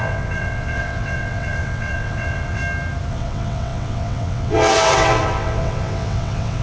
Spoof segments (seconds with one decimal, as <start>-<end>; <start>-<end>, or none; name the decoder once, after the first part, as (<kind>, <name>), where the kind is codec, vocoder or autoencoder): 0.0-2.6 (vocoder, WaveNeXt); 3.1-6.6